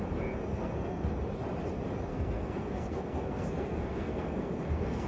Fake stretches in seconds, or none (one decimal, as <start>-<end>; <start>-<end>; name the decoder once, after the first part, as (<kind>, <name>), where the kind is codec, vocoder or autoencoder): 0.5-1.1 (codec, SNAC); 2.1-5.1